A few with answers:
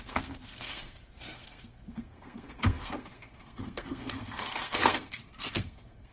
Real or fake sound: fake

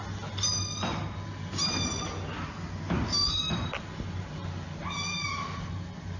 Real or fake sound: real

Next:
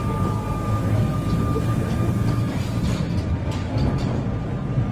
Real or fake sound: real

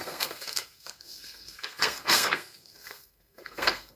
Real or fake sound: fake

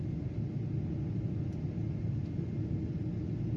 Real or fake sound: real